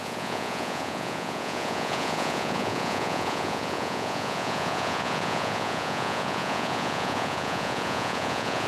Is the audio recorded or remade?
remade